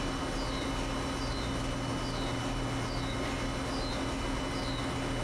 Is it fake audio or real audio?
real